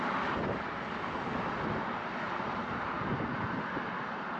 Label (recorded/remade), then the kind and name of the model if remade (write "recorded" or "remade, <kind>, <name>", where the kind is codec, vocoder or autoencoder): recorded